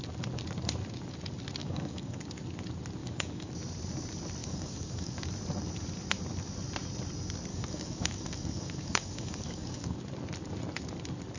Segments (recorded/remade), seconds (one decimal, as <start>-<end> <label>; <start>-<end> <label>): 0.0-1.6 recorded; 1.6-2.2 remade; 2.2-3.0 recorded; 3.0-3.5 remade; 3.5-4.4 recorded; 4.4-5.3 remade; 5.3-7.5 recorded; 7.5-10.0 remade; 10.0-11.4 recorded